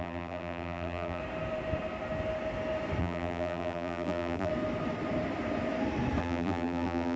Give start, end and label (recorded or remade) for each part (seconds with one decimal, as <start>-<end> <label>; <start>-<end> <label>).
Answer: 0.0-1.2 remade; 1.2-3.0 recorded; 3.0-4.5 remade; 4.5-6.2 recorded; 6.2-7.2 remade